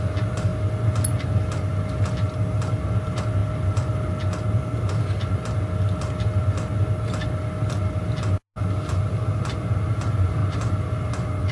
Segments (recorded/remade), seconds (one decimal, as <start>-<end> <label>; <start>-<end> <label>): 0.0-11.5 recorded